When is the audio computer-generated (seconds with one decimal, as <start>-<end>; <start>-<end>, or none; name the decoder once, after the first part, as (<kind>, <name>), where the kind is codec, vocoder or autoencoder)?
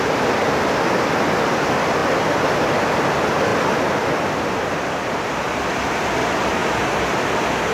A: 6.6-7.3 (vocoder, BigVGAN v2)